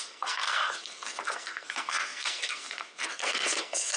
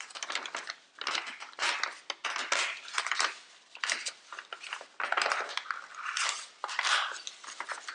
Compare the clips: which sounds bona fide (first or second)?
second